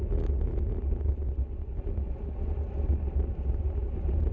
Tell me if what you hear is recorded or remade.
recorded